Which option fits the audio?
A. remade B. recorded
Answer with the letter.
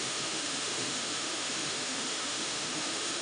A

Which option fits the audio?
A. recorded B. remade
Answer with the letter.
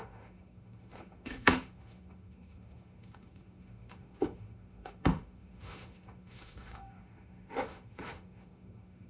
B